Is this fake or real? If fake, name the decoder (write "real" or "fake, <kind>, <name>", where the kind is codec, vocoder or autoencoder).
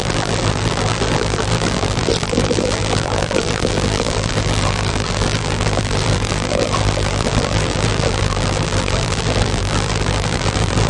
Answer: fake, vocoder, BigVGAN v2